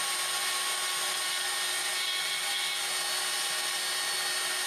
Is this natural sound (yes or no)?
yes